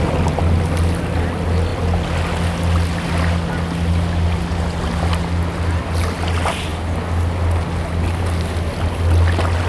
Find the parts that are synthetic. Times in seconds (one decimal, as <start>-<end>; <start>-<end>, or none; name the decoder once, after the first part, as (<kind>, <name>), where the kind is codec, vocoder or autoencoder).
none